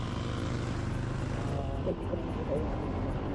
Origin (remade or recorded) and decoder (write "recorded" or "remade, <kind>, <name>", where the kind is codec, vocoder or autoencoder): recorded